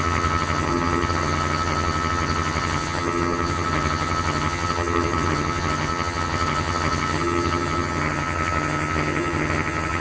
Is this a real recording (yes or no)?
no